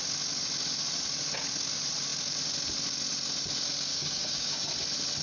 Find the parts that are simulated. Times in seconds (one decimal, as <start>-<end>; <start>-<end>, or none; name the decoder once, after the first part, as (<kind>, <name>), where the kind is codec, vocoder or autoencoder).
3.9-4.7 (codec, DAC)